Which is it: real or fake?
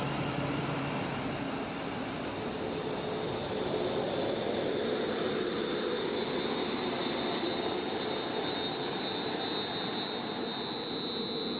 real